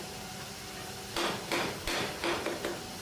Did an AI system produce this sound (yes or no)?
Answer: no